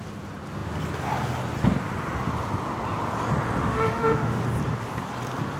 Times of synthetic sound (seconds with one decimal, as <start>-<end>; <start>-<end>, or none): 3.6-4.4